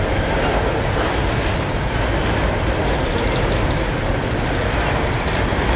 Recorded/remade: recorded